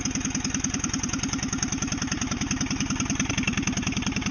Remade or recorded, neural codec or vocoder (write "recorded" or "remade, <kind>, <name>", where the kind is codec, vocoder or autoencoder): remade, vocoder, BigVGAN v2